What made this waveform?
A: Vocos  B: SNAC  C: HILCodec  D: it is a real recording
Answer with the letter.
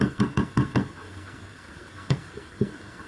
B